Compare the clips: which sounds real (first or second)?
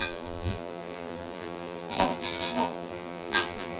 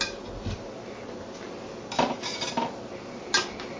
second